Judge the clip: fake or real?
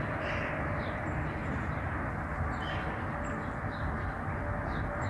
real